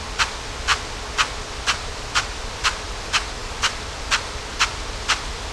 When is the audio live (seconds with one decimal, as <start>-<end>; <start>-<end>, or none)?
0.0-5.5